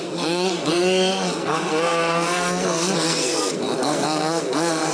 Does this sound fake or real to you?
fake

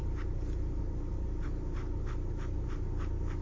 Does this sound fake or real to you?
real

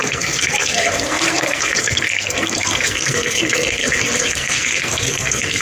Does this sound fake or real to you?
fake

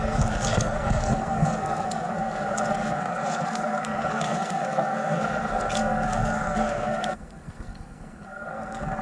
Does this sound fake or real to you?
fake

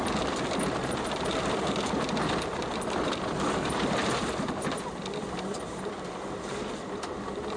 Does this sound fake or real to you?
real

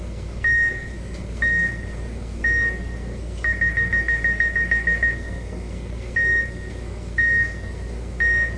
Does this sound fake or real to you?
fake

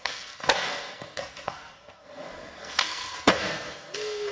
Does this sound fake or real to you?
fake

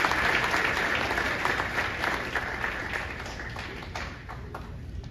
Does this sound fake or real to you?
real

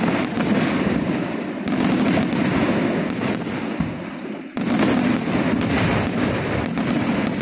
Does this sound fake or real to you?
real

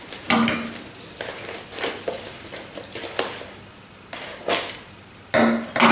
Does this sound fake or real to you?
real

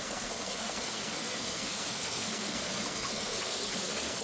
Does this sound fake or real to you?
fake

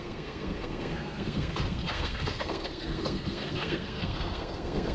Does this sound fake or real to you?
fake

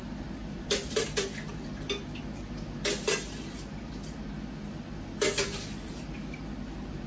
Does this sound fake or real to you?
real